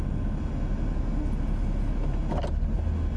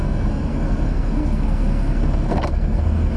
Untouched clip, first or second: first